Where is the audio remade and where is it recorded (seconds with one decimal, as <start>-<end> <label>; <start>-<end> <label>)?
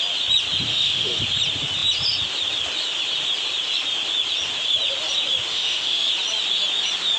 0.0-0.7 recorded; 0.7-1.2 remade; 1.2-5.5 recorded; 5.5-6.1 remade; 6.1-7.2 recorded